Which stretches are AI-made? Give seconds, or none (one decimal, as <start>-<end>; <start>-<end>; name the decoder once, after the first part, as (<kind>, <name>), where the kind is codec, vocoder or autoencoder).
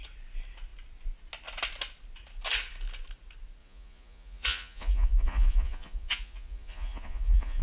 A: 3.6-7.6 (vocoder, Vocos)